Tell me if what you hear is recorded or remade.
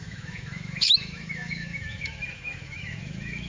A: remade